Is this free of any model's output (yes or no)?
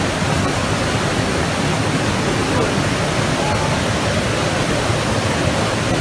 yes